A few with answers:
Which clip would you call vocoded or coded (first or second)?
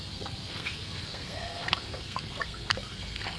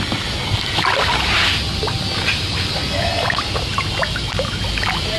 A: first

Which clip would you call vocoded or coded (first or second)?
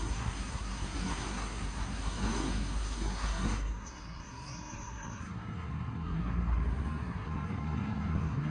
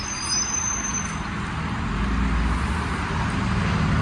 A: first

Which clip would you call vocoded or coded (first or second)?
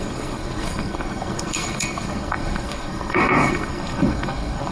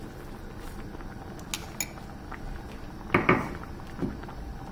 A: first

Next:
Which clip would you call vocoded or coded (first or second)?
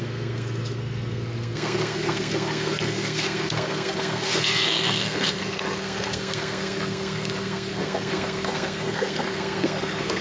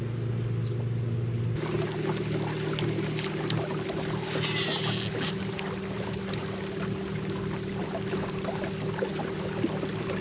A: first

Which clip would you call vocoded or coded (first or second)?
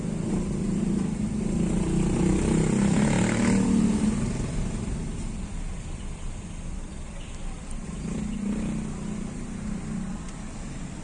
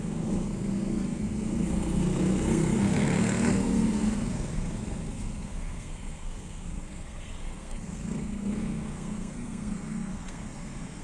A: second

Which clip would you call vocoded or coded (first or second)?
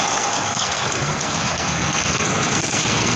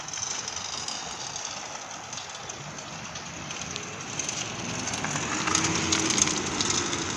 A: first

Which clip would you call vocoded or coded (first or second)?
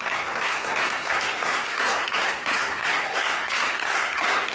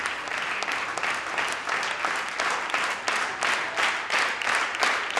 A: first